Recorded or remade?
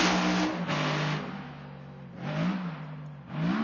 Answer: recorded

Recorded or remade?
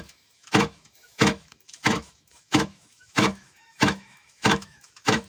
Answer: remade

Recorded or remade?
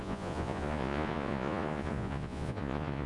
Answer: remade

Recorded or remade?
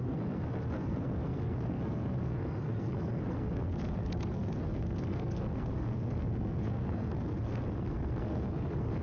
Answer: remade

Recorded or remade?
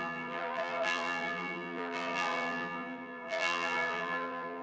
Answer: remade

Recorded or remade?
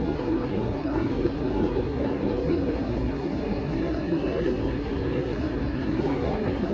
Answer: remade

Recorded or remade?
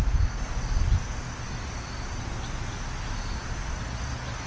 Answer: recorded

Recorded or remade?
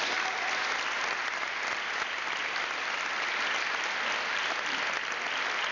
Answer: recorded